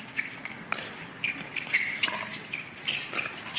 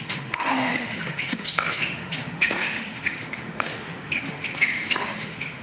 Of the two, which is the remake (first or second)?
second